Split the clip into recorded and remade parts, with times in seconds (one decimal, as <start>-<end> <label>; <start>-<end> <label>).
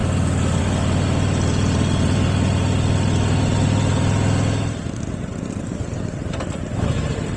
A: 0.0-7.4 recorded